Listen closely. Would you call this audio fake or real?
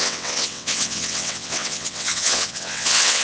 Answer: fake